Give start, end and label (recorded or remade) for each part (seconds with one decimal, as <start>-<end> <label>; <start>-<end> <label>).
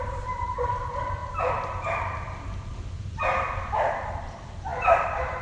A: 0.0-5.4 remade